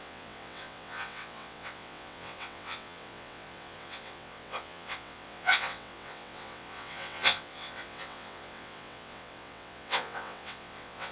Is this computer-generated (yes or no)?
yes